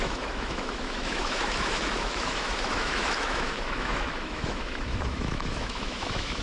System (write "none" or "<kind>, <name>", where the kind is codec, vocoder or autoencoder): autoencoder, DAC-VAE